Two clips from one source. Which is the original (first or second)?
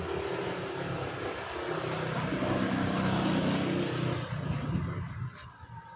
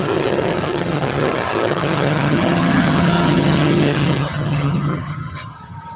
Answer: first